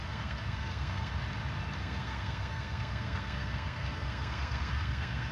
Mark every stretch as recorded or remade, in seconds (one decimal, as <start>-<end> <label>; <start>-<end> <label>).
0.0-1.1 remade; 1.1-1.8 recorded; 1.8-5.3 remade

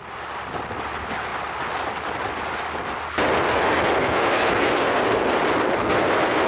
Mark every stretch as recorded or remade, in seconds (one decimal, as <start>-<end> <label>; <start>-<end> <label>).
0.0-6.5 recorded

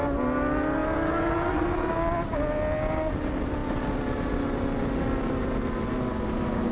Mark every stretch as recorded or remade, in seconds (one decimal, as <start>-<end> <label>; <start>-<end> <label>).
0.0-6.7 recorded

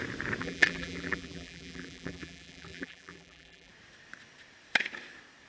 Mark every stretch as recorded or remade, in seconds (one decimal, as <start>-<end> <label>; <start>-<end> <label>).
0.0-0.4 recorded; 0.4-3.7 remade; 3.7-5.5 recorded